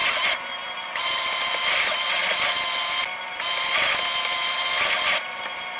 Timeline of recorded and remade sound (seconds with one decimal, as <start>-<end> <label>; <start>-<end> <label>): 0.0-5.8 recorded